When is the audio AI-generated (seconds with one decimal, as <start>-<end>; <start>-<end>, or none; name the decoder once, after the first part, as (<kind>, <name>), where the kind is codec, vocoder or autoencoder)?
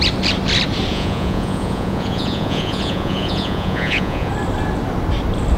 0.9-4.3 (vocoder, Vocos)